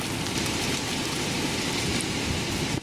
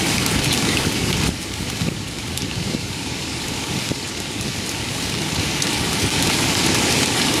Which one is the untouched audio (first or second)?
first